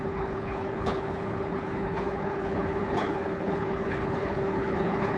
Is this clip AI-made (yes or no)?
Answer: yes